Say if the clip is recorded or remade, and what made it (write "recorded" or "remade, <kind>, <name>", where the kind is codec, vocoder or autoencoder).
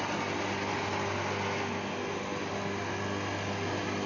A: recorded